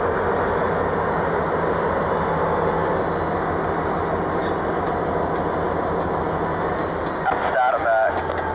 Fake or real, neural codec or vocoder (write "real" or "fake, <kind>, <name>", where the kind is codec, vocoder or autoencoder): real